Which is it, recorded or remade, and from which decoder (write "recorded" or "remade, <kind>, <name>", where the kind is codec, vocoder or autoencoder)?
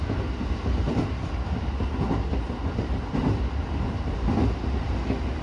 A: recorded